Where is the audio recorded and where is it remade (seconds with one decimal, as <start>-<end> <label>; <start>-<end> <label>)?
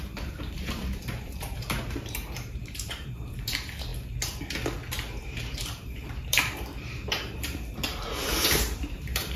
0.0-3.9 remade; 3.9-5.2 recorded; 5.2-9.4 remade